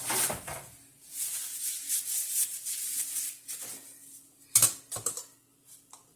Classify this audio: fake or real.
real